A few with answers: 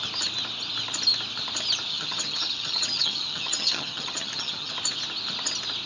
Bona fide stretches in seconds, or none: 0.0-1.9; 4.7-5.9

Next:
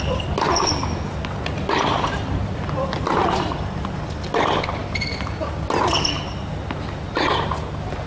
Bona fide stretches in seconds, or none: 0.0-8.1

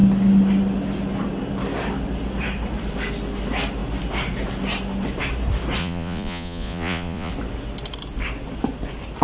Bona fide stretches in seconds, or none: 0.0-5.8; 7.3-9.2

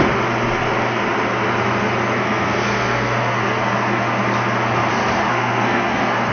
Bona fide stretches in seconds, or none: 0.0-2.2; 3.4-5.3

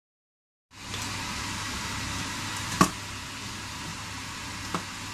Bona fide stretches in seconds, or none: 0.0-3.9; 4.6-5.1

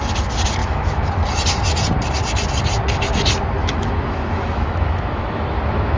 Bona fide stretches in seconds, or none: 0.0-0.6; 1.1-3.6